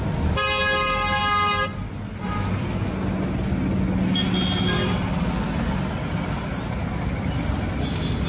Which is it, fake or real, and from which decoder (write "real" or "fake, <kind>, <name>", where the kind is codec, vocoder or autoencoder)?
real